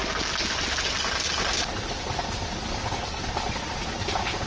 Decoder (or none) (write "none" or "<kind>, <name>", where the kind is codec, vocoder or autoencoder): none